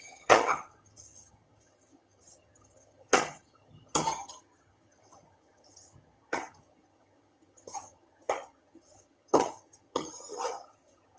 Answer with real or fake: fake